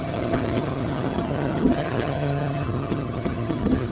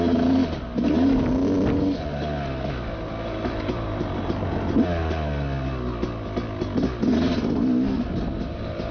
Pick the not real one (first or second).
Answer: first